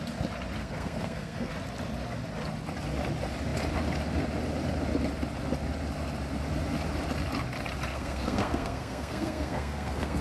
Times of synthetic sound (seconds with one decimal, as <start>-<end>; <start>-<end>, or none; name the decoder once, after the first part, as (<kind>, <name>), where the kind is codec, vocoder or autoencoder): 0.6-1.5 (codec, SNAC); 7.9-10.2